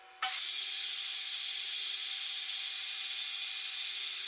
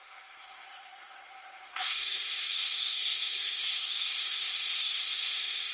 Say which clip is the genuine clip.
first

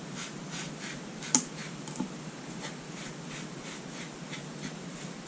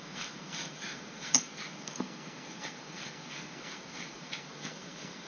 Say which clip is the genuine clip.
first